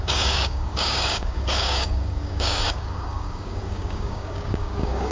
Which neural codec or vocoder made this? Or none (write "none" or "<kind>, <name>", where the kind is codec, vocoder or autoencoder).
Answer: codec, DAC